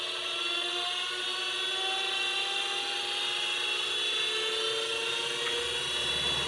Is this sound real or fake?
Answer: real